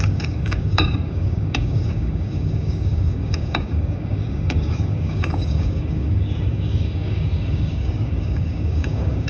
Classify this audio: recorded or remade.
remade